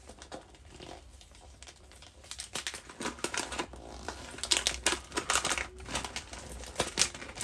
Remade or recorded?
recorded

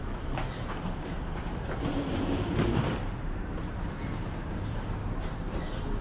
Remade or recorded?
remade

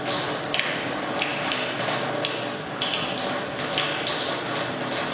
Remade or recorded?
recorded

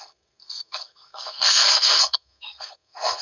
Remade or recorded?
remade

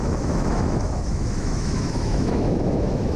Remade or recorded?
remade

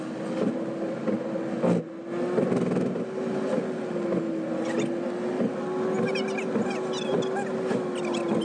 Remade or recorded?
recorded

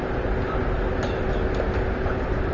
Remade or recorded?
recorded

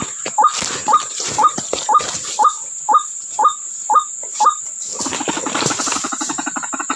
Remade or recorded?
remade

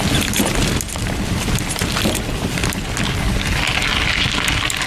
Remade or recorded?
recorded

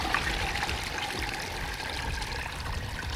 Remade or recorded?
recorded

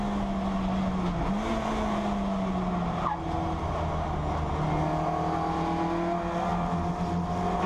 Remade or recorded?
recorded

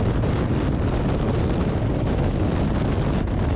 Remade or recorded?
recorded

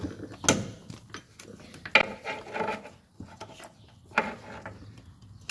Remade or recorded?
recorded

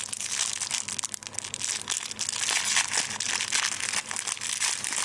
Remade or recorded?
recorded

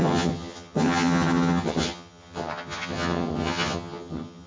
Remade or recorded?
remade